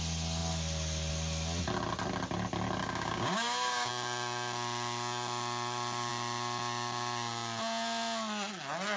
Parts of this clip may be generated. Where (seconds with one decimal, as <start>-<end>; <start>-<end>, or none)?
2.8-3.9